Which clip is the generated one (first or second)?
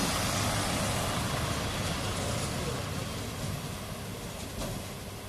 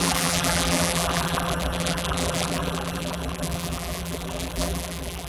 second